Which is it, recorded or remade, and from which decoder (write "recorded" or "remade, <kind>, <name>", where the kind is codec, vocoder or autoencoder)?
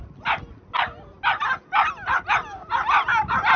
recorded